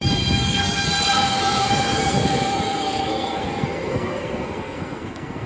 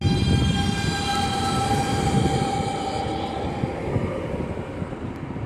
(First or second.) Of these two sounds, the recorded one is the second